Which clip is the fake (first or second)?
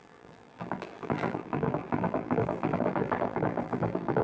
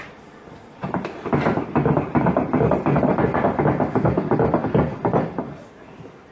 first